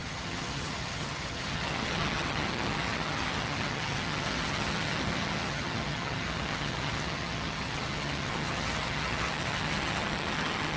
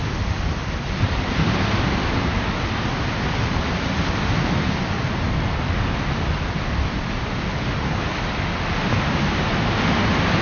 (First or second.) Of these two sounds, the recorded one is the second